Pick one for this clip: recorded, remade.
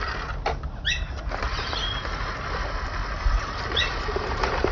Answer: recorded